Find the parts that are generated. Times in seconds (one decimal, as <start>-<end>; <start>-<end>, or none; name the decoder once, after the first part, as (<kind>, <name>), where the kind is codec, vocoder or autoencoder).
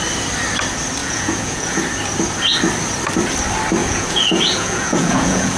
1.0-1.8 (vocoder, Vocos); 3.8-5.6